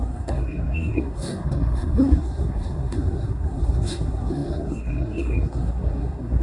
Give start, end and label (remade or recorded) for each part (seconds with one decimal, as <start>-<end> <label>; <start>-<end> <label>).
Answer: 0.0-6.4 remade